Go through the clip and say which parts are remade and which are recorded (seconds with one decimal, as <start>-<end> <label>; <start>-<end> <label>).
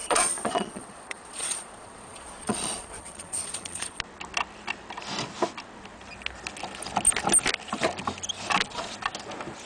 0.0-4.0 remade; 4.0-9.7 recorded